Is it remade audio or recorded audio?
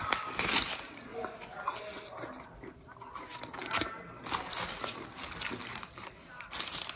recorded